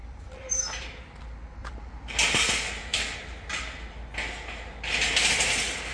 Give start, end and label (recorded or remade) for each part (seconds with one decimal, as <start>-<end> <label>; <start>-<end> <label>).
0.0-1.0 remade; 1.0-1.6 recorded; 1.6-2.5 remade; 2.5-2.9 recorded; 2.9-3.5 remade; 3.5-5.9 recorded